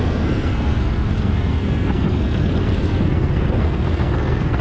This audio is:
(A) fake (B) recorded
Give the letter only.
A